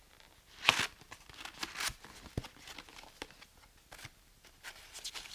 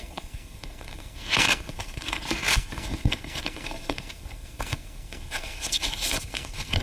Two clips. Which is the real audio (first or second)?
first